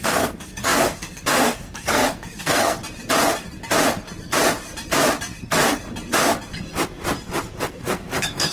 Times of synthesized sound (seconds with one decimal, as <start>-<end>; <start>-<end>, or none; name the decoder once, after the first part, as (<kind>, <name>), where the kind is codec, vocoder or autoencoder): 0.0-2.8 (codec, SNAC); 7.6-8.5